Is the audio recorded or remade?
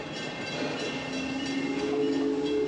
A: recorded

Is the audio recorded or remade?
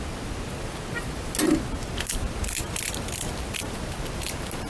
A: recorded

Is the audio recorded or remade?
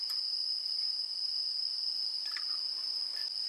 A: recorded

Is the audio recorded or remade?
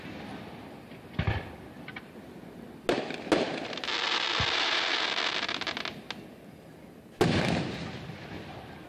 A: recorded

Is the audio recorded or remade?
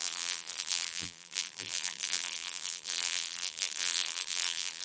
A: remade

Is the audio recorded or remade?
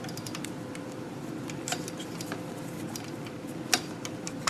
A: remade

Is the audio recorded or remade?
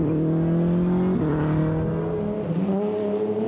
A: recorded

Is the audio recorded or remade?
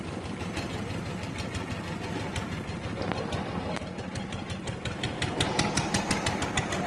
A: recorded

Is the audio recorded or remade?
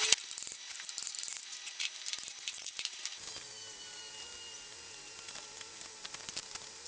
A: recorded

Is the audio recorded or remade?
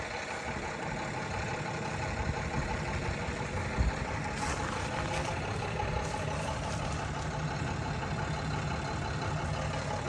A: recorded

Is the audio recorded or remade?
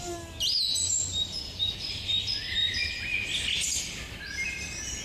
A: recorded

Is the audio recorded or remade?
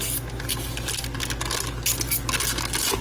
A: recorded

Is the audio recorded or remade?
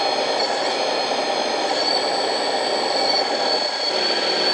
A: remade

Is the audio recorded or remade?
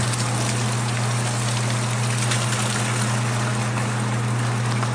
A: recorded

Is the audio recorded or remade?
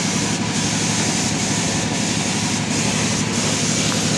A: recorded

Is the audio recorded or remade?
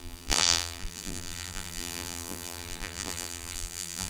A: remade